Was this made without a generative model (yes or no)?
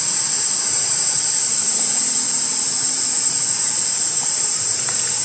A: no